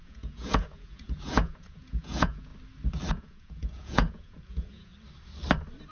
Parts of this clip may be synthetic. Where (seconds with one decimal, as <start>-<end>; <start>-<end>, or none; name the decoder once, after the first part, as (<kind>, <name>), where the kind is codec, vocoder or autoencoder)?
0.0-2.5 (vocoder, Vocos); 3.1-4.9

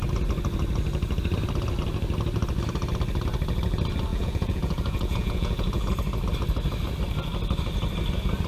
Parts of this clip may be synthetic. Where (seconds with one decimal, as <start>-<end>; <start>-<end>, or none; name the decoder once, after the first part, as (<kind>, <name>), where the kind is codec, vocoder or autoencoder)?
4.1-5.9 (vocoder, Vocos)